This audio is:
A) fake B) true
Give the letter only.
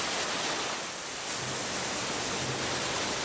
B